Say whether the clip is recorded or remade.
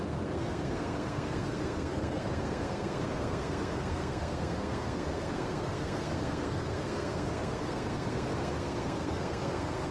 remade